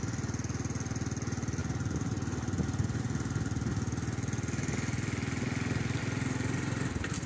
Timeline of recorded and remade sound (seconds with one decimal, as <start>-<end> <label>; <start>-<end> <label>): 0.0-7.3 recorded